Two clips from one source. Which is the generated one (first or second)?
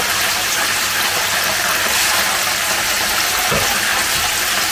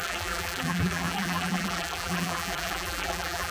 second